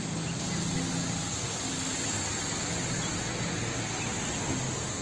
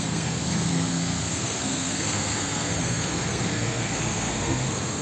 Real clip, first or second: first